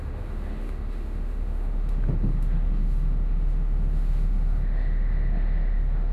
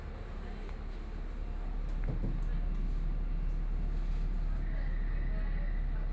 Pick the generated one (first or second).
first